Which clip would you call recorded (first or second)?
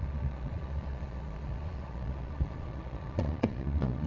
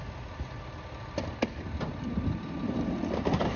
second